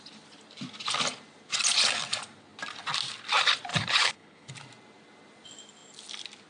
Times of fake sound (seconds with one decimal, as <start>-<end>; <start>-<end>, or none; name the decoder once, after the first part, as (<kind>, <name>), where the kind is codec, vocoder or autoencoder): 3.7-4.5 (codec, HILCodec)